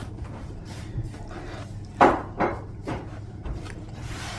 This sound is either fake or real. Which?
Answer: fake